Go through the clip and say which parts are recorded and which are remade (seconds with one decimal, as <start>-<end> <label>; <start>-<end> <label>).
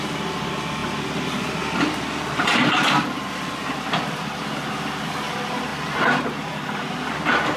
0.0-7.6 recorded